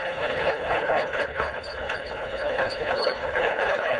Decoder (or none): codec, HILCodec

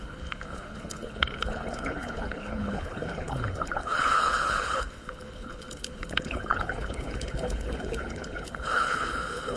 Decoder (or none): codec, HILCodec